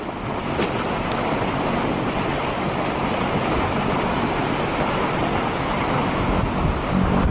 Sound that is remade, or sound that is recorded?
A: recorded